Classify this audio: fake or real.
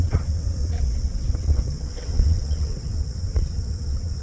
fake